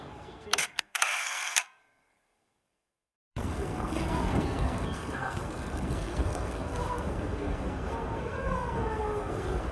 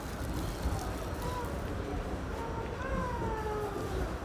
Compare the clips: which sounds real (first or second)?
second